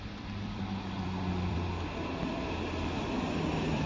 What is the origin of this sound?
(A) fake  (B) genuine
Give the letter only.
A